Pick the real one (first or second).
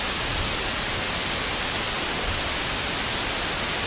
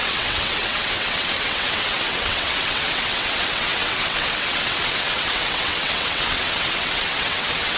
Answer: first